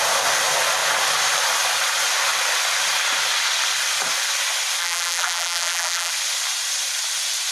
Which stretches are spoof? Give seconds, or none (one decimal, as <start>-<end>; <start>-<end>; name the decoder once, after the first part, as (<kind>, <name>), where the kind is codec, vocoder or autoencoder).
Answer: 4.8-6.1 (vocoder, BigVGAN v2)